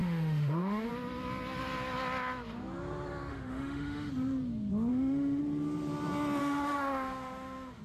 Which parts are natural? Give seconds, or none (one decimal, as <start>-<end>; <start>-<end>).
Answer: 0.9-3.3; 4.1-4.9; 5.4-6.4

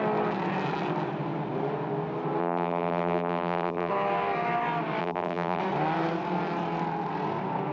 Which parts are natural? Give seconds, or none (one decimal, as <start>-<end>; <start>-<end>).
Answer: 0.0-2.4; 3.9-5.0; 5.6-7.7

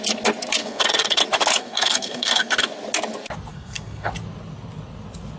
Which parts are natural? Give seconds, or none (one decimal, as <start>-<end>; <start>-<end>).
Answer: 0.0-0.6; 1.2-1.6; 2.5-3.5; 4.1-5.4

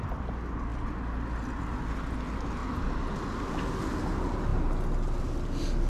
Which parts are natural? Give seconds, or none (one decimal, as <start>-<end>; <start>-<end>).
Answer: 0.0-5.9

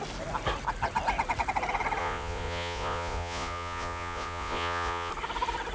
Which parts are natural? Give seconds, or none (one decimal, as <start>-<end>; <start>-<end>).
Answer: 0.0-2.0; 5.1-5.7

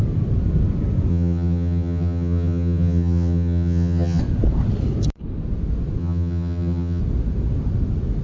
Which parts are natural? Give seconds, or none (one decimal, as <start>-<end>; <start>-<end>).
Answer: 0.0-1.1; 4.2-6.0; 7.0-8.2

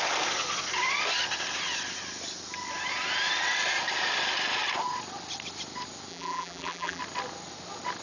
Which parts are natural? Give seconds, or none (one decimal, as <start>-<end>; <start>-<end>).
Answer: 0.0-6.1; 7.0-8.0